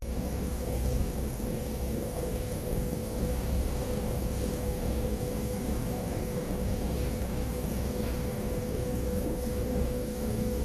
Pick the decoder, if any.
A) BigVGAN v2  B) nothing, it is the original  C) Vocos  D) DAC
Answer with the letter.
D